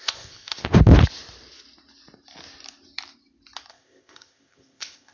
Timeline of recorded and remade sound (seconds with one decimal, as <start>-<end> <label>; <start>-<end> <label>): 0.0-0.6 remade; 0.6-3.7 recorded; 3.7-5.1 remade

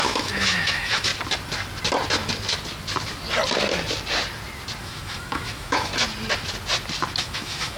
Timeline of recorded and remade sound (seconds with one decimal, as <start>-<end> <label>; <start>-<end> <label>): 0.0-1.1 remade; 1.1-4.8 recorded; 4.8-5.9 remade; 5.9-7.2 recorded; 7.2-7.8 remade